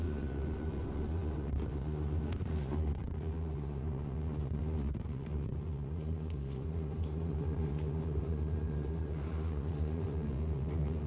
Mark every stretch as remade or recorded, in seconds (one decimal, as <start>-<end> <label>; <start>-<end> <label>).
0.0-11.1 remade